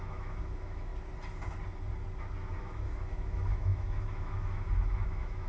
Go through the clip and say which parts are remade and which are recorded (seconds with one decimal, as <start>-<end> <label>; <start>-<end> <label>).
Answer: 0.0-0.9 remade; 0.9-2.6 recorded; 2.6-5.5 remade

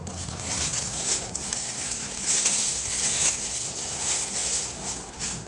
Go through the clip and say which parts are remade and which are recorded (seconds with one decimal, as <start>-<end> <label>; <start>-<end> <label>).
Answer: 0.0-5.5 remade

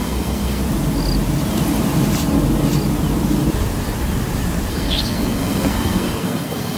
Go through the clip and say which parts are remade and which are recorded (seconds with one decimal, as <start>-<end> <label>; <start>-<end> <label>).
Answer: 0.0-0.6 remade; 0.6-4.7 recorded; 4.7-6.8 remade

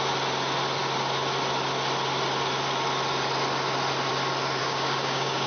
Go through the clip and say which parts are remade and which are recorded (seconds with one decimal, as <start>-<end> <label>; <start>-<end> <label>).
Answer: 0.0-4.6 recorded; 4.6-5.5 remade